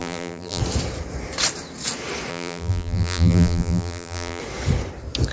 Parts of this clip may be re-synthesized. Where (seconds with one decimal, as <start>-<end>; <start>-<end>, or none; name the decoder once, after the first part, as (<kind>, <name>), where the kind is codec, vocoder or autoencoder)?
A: 0.0-0.6 (vocoder, BigVGAN v2); 2.3-4.4